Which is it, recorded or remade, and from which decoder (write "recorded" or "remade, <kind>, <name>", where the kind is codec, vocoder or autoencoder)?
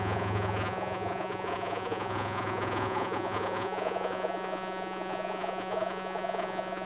remade, vocoder, Vocos